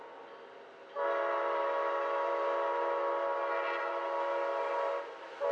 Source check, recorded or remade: recorded